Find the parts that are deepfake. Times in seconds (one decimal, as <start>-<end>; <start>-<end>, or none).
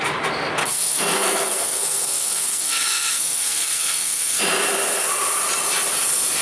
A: 0.6-4.4